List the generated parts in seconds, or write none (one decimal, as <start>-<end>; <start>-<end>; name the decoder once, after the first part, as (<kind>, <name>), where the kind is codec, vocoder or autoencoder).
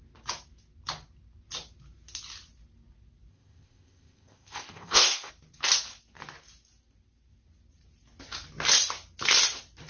3.3-5.3 (codec, ZipCodec)